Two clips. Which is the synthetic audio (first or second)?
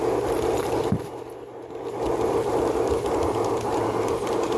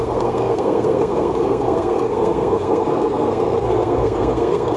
second